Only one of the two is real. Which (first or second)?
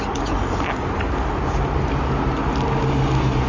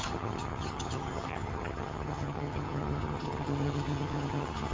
first